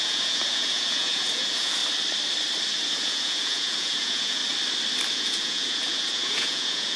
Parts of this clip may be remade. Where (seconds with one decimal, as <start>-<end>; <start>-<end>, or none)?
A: 0.0-1.8; 2.8-4.4; 5.1-7.0